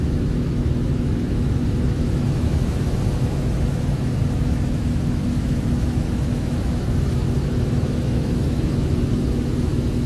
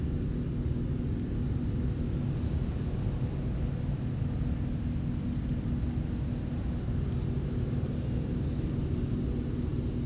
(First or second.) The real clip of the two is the second